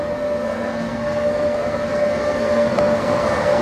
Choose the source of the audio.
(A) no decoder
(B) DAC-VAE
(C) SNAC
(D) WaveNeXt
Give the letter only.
C